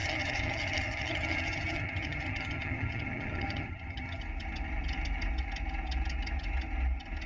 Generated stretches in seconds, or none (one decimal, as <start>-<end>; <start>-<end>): 0.0-4.2